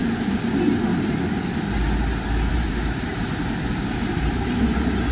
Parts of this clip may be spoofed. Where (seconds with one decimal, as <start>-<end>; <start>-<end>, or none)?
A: 2.5-5.1

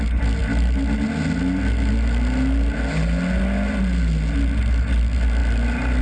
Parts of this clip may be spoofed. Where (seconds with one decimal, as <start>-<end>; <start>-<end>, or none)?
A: none

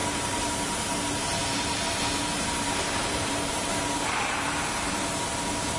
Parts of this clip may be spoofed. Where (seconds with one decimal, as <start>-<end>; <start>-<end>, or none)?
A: 0.0-5.8

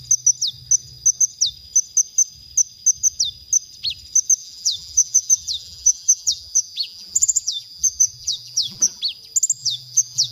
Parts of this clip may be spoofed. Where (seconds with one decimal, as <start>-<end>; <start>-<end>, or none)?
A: 4.4-9.0; 9.6-10.3

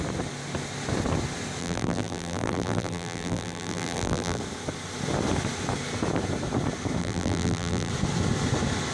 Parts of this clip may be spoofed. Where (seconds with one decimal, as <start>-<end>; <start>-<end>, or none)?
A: 1.6-4.4; 7.0-7.9